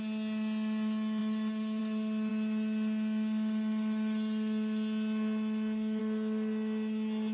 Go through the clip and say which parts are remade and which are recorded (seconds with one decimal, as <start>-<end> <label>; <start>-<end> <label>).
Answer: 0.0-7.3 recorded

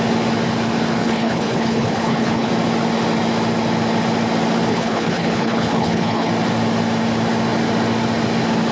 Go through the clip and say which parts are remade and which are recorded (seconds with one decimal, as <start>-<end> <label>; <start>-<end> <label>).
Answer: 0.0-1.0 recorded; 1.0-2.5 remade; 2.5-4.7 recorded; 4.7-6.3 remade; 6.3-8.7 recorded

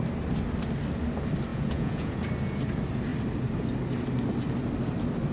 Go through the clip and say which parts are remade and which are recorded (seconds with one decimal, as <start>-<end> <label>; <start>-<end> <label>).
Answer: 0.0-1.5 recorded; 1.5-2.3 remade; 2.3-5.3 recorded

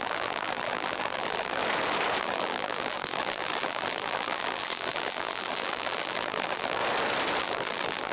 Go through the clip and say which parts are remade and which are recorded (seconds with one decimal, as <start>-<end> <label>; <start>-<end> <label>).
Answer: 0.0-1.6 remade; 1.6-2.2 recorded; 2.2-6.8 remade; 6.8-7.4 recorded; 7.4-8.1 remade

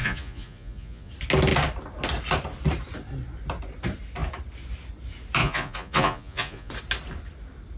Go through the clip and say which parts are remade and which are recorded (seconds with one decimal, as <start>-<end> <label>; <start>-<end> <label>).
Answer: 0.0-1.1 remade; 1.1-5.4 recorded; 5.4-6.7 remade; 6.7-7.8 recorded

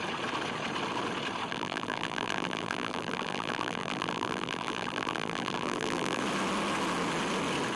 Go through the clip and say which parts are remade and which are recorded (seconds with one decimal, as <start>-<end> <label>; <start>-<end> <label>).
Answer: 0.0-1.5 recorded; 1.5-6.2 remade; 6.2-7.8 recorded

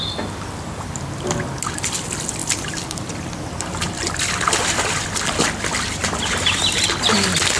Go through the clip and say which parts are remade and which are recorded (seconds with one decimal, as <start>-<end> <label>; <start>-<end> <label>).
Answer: 0.0-2.4 recorded; 2.4-4.6 remade; 4.6-6.0 recorded; 6.0-6.6 remade; 6.6-7.6 recorded